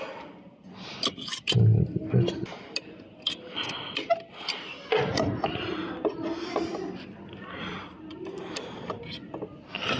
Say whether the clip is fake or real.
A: real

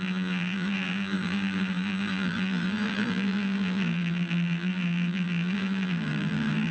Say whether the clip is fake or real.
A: fake